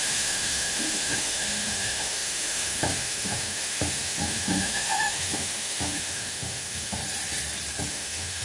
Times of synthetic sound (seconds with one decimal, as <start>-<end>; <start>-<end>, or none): 0.0-7.0; 7.9-8.4